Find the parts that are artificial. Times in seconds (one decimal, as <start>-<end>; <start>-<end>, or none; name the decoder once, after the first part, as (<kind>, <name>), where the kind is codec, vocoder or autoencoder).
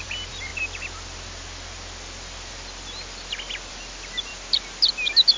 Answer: 0.0-0.5 (vocoder, BigVGAN v2); 3.7-4.3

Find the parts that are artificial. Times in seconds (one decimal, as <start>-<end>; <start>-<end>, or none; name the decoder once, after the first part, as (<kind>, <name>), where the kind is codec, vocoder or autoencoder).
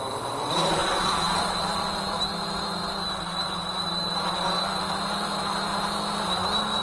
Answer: 0.0-5.7 (vocoder, BigVGAN v2)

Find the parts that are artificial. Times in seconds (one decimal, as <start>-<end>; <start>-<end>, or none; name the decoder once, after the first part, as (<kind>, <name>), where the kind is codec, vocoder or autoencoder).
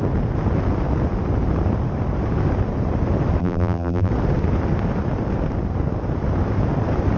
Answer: 3.4-4.1 (vocoder, BigVGAN v2)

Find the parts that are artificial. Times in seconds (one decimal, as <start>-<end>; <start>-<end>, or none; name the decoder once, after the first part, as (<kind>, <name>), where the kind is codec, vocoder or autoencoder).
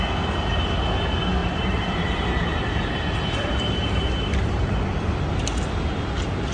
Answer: 1.4-4.7 (vocoder, BigVGAN v2)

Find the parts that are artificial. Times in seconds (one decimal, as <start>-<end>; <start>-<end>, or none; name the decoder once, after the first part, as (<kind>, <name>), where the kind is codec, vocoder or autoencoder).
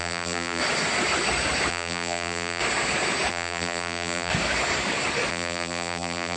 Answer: 0.0-0.6 (vocoder, BigVGAN v2); 1.7-2.6; 3.3-4.3; 5.3-6.4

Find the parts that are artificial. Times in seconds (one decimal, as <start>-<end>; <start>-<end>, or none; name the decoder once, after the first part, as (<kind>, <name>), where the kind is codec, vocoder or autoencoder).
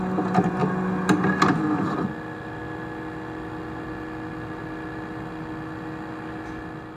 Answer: none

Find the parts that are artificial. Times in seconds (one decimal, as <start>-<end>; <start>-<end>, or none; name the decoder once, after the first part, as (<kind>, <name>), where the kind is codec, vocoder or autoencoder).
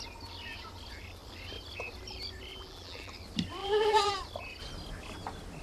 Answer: 2.5-3.1 (vocoder, BigVGAN v2); 3.6-4.1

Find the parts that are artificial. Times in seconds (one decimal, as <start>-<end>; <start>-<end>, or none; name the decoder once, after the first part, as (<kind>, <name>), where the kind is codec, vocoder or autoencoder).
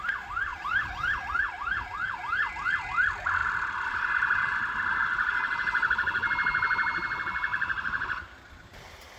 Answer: 0.5-1.3 (vocoder, BigVGAN v2)